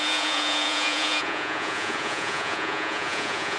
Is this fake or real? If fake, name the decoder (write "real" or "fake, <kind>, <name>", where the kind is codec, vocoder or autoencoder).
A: fake, vocoder, Vocos